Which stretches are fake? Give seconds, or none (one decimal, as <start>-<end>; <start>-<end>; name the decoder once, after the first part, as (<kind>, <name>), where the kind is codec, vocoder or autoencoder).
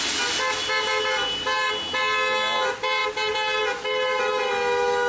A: none